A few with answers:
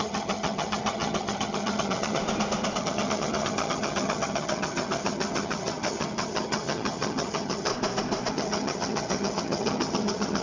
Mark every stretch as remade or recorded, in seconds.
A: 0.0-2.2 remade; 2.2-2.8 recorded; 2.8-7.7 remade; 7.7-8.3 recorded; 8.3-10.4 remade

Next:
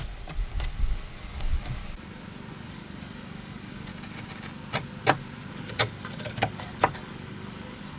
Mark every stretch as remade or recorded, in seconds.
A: 0.0-1.8 remade; 1.8-2.7 recorded; 2.7-3.9 remade; 3.9-5.5 recorded; 5.5-8.0 remade

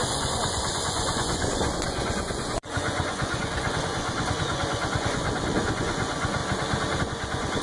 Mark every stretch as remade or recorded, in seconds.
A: 0.0-6.4 remade; 6.4-7.0 recorded; 7.0-7.6 remade

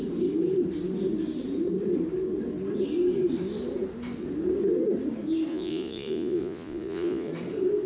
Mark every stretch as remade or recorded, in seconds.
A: 0.0-5.5 recorded; 5.5-7.3 remade; 7.3-7.9 recorded

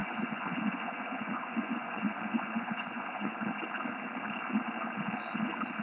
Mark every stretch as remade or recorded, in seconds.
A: 0.0-3.3 remade; 3.3-5.8 recorded

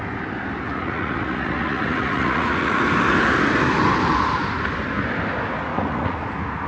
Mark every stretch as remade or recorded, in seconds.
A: 0.0-0.7 recorded; 0.7-2.8 remade; 2.8-5.7 recorded; 5.7-6.3 remade; 6.3-6.7 recorded

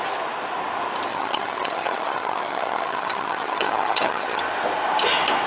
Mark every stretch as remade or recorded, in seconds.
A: 0.0-1.1 recorded; 1.1-4.4 remade; 4.4-5.5 recorded